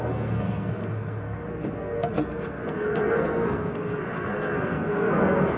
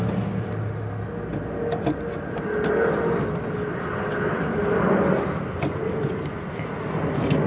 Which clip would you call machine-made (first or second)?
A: first